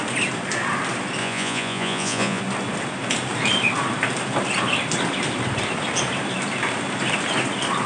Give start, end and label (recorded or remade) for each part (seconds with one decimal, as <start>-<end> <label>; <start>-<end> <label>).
0.0-1.2 recorded; 1.2-2.4 remade; 2.4-7.9 recorded